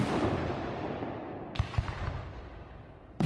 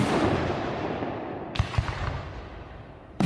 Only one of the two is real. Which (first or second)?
first